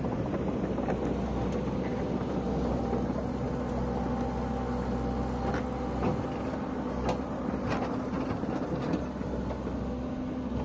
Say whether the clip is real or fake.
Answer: real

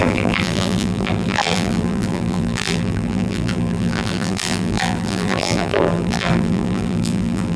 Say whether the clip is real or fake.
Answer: fake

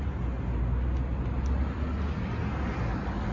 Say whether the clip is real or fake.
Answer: real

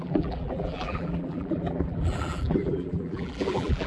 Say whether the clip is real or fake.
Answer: fake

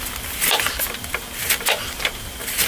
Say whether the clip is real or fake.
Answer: real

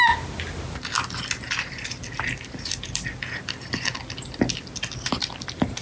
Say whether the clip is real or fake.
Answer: real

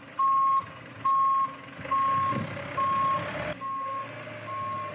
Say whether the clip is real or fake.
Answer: real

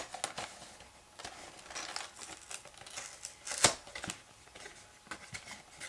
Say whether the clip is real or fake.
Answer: real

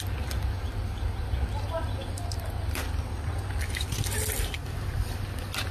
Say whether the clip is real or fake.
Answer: real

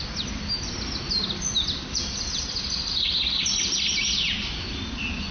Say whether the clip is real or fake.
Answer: real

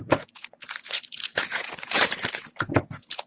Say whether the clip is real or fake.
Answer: fake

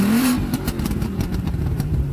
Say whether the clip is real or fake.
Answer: fake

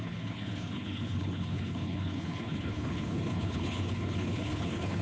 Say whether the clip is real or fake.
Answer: fake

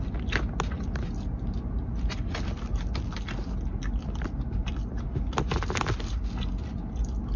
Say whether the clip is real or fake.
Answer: real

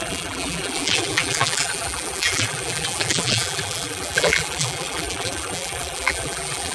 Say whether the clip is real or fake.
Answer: fake